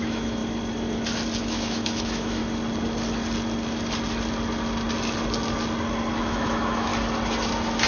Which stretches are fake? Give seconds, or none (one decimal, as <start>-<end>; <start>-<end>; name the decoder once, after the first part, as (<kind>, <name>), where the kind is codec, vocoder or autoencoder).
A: 0.0-0.4 (autoencoder, DAC-VAE); 1.4-2.4; 6.2-6.9